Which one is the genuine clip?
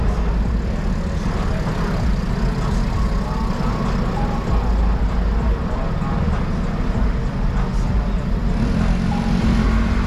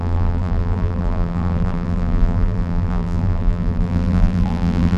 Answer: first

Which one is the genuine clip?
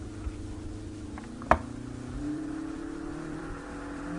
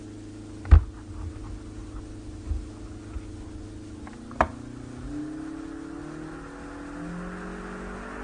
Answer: second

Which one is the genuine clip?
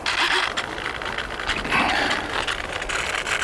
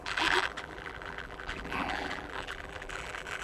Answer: first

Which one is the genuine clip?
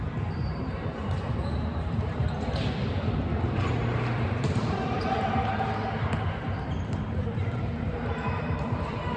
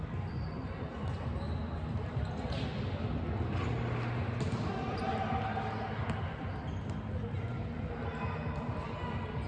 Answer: second